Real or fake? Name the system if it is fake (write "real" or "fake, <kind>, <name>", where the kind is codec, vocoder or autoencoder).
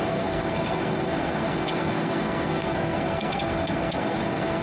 fake, codec, SNAC